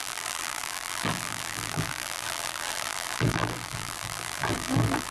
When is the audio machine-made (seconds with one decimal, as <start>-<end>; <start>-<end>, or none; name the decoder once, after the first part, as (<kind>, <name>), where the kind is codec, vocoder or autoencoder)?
0.0-5.1 (vocoder, BigVGAN v2)